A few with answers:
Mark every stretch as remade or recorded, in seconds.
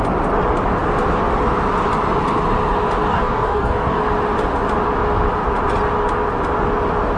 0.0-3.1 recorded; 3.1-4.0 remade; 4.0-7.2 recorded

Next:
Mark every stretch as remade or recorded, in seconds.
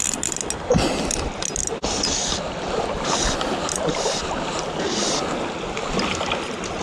0.0-6.8 recorded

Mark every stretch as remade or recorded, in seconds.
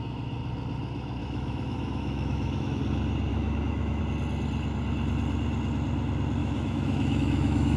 0.0-1.2 recorded; 1.2-2.8 remade; 2.8-3.3 recorded; 3.3-4.0 remade; 4.0-6.4 recorded; 6.4-7.8 remade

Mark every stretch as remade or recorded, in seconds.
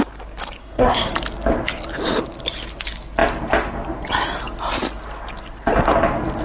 0.0-0.6 recorded; 0.6-1.1 remade; 1.1-6.4 recorded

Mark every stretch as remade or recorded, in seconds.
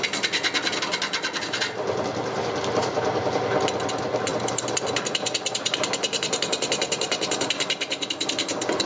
0.0-8.9 recorded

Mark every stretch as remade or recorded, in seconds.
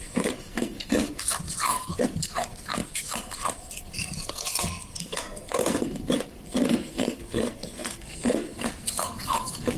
0.0-9.8 remade